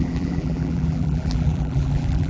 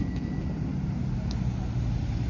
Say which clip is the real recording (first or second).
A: second